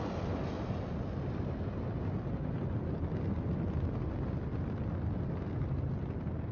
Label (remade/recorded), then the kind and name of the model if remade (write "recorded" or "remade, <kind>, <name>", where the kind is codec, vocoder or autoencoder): recorded